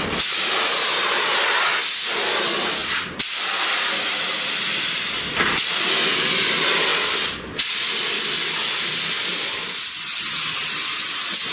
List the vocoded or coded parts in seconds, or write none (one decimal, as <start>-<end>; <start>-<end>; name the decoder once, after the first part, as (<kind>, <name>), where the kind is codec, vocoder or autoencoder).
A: 2.8-6.2 (vocoder, BigVGAN v2); 6.9-7.9; 9.3-9.9